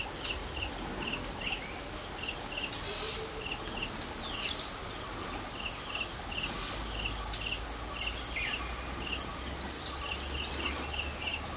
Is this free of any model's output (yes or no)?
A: yes